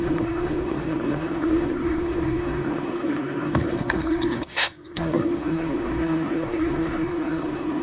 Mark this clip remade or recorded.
remade